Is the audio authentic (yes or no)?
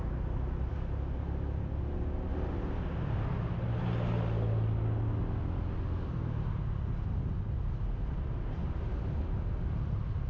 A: yes